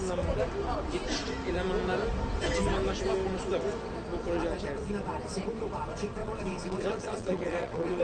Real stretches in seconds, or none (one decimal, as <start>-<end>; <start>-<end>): 0.0-6.2